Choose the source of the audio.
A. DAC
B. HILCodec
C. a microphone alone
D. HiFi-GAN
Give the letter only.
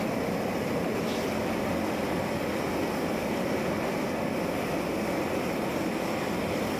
C